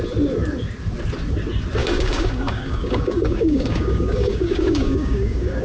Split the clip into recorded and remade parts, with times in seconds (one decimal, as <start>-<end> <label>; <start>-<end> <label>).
0.0-1.8 recorded; 1.8-5.6 remade